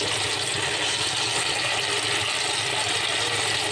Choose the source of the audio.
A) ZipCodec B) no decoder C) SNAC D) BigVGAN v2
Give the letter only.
B